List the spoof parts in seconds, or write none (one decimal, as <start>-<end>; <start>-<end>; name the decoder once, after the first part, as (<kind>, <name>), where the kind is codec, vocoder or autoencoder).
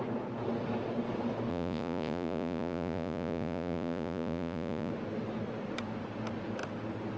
1.5-4.9 (vocoder, Vocos)